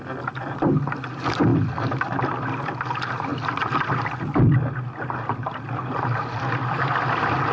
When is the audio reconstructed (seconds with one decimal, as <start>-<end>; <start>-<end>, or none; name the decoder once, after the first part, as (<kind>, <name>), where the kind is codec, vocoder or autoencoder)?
none

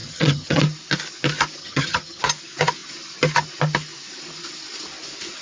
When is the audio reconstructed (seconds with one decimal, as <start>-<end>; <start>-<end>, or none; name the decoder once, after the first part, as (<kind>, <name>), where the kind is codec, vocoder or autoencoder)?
0.0-0.6 (vocoder, HiFi-GAN); 1.6-2.2

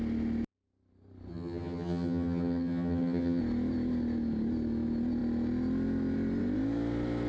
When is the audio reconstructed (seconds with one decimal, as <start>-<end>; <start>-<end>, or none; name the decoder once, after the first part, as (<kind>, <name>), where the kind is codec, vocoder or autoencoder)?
1.3-3.4 (vocoder, HiFi-GAN)